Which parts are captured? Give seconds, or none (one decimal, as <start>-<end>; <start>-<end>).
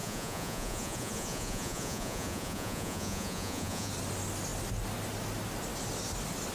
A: 3.9-6.5